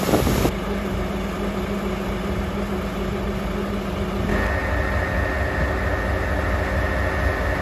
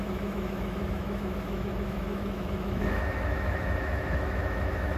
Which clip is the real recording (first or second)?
first